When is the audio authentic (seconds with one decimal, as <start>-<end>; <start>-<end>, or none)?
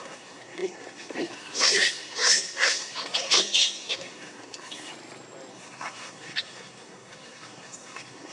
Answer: 4.9-5.5